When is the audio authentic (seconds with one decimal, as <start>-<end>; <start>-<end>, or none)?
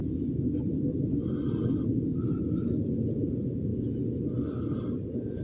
0.0-3.2; 3.7-4.7